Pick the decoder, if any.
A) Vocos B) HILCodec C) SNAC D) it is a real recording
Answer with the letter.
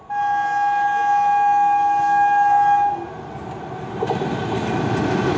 D